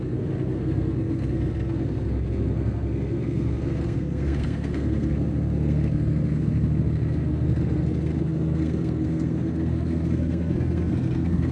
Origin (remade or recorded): remade